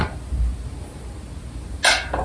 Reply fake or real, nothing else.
real